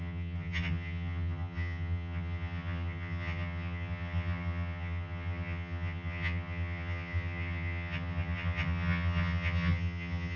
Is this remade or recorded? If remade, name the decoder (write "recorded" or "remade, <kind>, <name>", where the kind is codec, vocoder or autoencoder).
remade, vocoder, HiFi-GAN